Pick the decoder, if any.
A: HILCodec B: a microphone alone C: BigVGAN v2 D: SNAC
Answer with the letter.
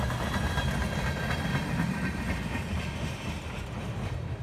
B